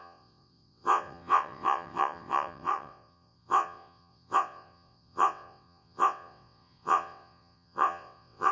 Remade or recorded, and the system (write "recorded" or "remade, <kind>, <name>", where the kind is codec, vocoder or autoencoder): remade, vocoder, WaveNeXt